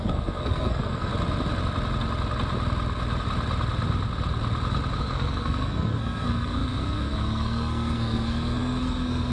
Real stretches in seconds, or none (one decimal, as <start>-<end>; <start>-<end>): 1.1-5.0